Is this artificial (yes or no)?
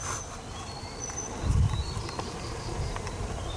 no